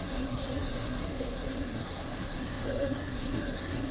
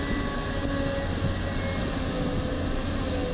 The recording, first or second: second